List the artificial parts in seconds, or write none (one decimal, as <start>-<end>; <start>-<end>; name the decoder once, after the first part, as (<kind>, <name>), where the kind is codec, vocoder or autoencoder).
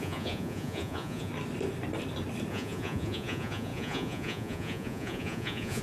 0.0-1.3 (vocoder, Vocos); 2.5-5.8